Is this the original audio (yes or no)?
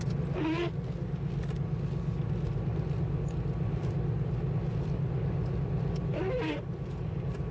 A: yes